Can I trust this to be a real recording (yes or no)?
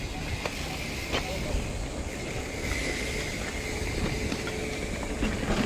yes